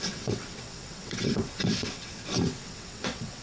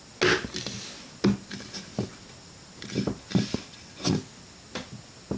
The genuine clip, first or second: second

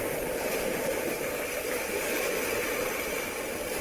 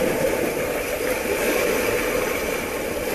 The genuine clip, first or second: second